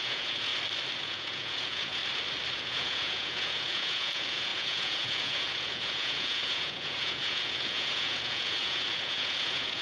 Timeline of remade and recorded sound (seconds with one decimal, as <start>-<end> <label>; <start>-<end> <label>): 0.0-0.5 remade; 0.5-1.0 recorded; 1.0-2.0 remade; 2.0-2.5 recorded; 2.5-9.8 remade